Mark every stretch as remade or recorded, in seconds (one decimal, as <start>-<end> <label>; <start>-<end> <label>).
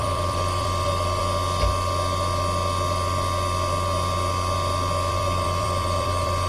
0.0-1.2 remade; 1.2-5.1 recorded; 5.1-6.5 remade